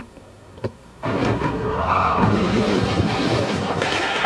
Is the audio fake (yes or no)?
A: yes